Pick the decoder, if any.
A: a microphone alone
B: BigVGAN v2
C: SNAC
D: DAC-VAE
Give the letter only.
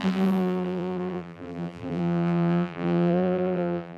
B